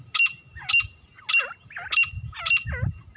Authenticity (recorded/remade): recorded